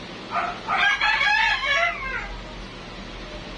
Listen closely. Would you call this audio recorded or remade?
recorded